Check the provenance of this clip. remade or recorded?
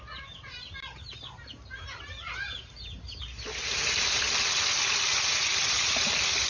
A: recorded